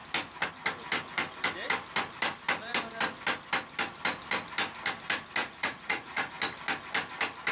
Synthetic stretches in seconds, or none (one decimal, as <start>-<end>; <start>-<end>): 5.4-6.3